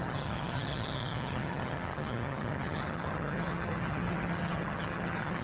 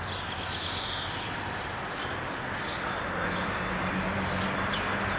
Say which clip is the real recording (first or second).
second